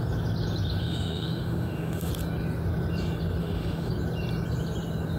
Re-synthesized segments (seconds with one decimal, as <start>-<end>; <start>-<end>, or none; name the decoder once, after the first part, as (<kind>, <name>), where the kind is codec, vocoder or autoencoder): 0.8-2.1 (autoencoder, DAC-VAE); 3.4-3.9